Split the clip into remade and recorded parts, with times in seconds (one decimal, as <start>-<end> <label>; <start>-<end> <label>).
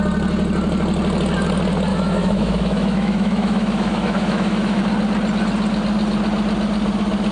0.0-1.9 recorded; 1.9-4.8 remade; 4.8-7.3 recorded